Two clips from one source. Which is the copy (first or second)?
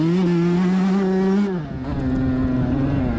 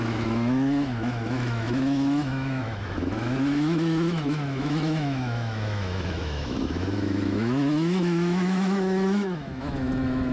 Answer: second